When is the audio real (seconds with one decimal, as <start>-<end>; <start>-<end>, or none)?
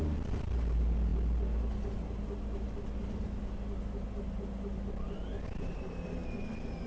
0.0-6.9